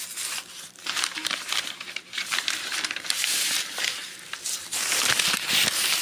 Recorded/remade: remade